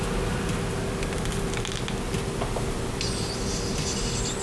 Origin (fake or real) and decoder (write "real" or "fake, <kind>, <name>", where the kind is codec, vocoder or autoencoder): real